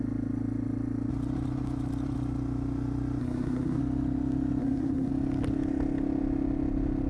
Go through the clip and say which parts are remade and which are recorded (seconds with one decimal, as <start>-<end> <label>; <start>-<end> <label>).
0.0-3.2 recorded; 3.2-3.8 remade; 3.8-4.6 recorded; 4.6-5.1 remade; 5.1-7.1 recorded